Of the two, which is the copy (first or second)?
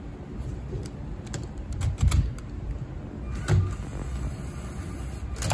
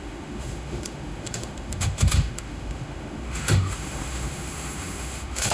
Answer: second